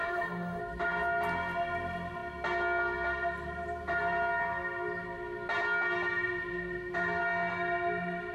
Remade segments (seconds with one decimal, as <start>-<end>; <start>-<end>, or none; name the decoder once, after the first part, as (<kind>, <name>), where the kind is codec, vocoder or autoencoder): 0.0-0.6 (autoencoder, DAC-VAE)

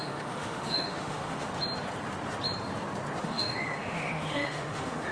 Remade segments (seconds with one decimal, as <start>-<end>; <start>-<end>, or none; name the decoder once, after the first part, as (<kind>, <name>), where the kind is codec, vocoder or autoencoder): 0.0-1.5 (autoencoder, DAC-VAE); 3.2-5.1

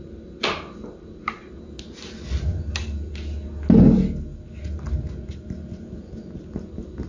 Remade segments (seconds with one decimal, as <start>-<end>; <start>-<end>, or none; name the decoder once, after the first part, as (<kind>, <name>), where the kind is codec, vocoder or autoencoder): none